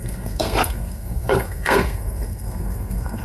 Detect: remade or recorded remade